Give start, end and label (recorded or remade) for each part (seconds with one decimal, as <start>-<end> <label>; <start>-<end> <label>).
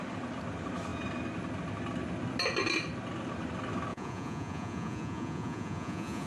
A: 0.0-3.9 recorded; 3.9-6.3 remade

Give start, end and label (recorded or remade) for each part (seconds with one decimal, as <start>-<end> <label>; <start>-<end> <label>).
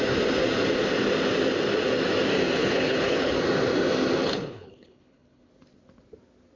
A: 0.0-2.6 recorded; 2.6-3.3 remade; 3.3-4.2 recorded; 4.2-5.5 remade; 5.5-6.6 recorded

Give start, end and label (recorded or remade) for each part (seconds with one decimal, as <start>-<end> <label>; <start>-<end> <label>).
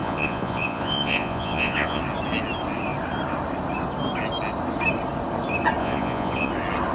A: 0.0-2.0 remade; 2.0-5.8 recorded; 5.8-6.5 remade; 6.5-6.9 recorded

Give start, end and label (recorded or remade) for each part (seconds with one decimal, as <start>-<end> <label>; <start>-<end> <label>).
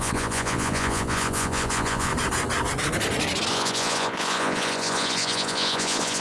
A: 0.0-2.1 remade; 2.1-3.5 recorded; 3.5-6.2 remade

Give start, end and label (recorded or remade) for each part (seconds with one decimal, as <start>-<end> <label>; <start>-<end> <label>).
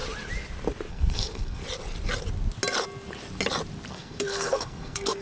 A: 0.0-0.9 recorded; 0.9-1.6 remade; 1.6-3.9 recorded; 3.9-5.2 remade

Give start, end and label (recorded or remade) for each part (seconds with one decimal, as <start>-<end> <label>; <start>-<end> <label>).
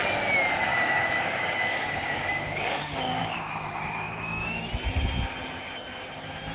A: 0.0-0.7 recorded; 0.7-4.6 remade; 4.6-6.5 recorded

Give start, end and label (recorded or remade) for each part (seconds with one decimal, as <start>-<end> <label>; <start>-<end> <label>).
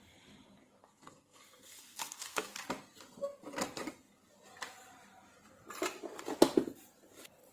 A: 0.0-0.8 recorded; 0.8-2.5 remade; 2.5-7.5 recorded